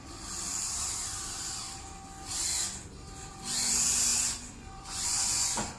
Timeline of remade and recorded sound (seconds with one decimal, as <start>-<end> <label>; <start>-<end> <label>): 0.0-4.1 recorded; 4.1-5.8 remade